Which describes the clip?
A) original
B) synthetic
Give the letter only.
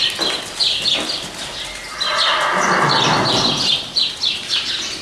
A